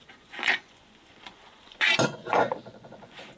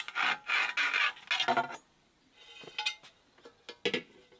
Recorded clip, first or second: second